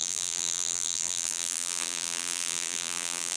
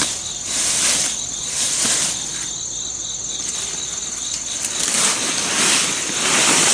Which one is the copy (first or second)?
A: first